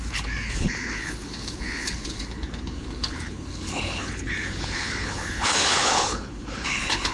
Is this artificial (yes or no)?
yes